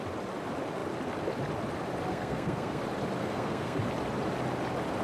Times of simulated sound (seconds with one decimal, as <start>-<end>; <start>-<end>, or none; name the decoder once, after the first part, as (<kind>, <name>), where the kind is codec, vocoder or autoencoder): 2.1-2.8 (codec, SNAC); 3.2-3.8